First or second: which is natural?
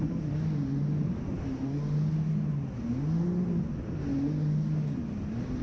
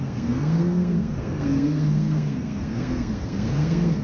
first